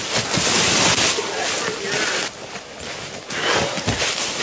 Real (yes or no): yes